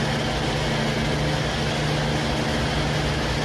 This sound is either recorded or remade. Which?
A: recorded